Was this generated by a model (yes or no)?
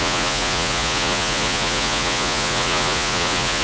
yes